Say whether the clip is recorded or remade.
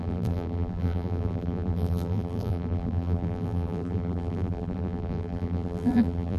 remade